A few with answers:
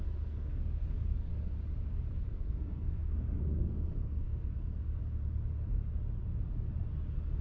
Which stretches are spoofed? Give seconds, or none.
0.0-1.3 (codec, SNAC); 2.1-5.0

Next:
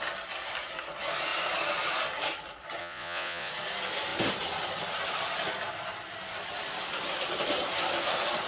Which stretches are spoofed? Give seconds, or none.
2.8-3.5 (vocoder, Vocos)

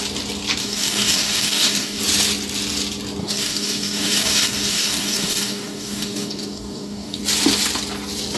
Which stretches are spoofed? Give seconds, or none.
0.6-2.0 (codec, DAC); 3.2-7.2

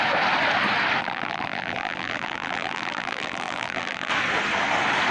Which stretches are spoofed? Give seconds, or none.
1.0-4.1 (vocoder, BigVGAN v2)

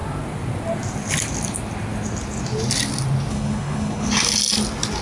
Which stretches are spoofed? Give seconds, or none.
3.3-4.1 (codec, HILCodec)

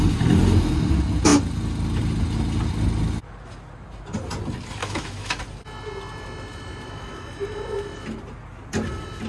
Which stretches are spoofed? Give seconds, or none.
4.8-5.4 (autoencoder, DAC-VAE)

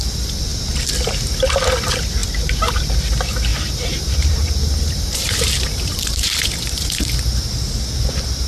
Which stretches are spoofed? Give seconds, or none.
2.2-2.8 (vocoder, BigVGAN v2); 3.5-7.6

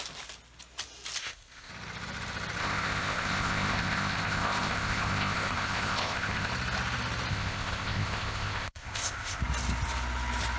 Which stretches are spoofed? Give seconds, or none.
1.2-1.7 (codec, ZipCodec); 2.6-6.5; 7.3-9.4